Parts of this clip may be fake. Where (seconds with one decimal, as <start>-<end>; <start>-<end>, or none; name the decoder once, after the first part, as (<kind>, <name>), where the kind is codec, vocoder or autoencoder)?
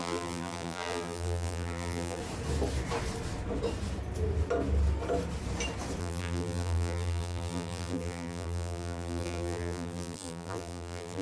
0.0-2.2 (vocoder, BigVGAN v2); 6.0-11.2